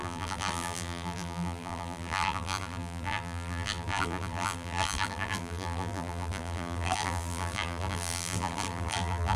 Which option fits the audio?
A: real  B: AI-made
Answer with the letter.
B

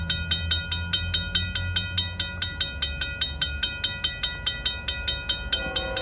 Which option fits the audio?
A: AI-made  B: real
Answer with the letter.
B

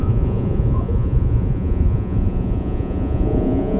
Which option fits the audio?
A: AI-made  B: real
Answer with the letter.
A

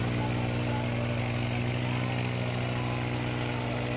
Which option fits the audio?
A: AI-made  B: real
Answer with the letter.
B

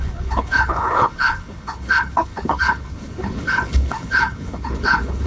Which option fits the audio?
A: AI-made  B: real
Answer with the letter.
A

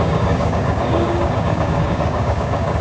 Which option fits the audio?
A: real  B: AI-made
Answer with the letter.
B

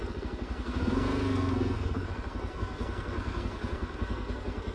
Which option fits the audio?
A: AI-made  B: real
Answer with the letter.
A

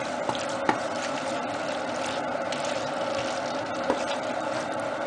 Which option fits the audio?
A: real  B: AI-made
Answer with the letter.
A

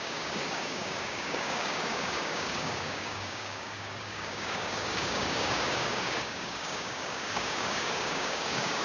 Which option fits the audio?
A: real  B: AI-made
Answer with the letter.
B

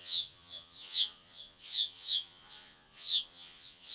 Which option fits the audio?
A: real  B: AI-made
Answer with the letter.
B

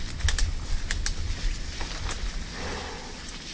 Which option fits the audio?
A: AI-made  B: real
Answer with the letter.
B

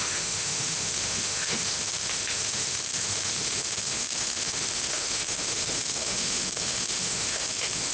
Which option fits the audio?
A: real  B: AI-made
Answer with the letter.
B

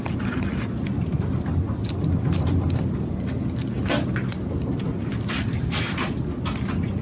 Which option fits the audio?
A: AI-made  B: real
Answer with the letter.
B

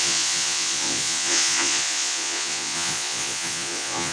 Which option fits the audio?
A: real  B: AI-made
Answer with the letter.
B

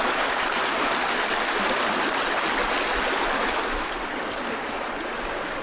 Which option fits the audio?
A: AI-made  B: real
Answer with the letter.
B